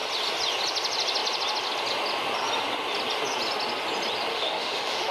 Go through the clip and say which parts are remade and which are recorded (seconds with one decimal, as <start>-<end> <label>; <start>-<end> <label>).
0.0-4.3 recorded; 4.3-5.1 remade